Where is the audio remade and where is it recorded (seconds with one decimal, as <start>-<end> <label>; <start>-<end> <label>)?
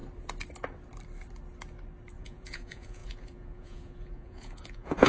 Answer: 0.0-2.2 recorded; 2.2-5.1 remade